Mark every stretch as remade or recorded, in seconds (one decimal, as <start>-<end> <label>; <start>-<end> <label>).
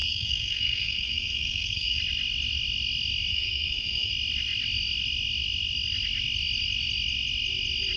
0.0-2.0 remade; 2.0-3.3 recorded; 3.3-4.1 remade; 4.1-8.0 recorded